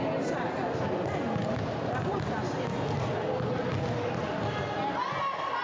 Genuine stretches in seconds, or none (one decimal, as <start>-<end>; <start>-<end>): 0.0-5.6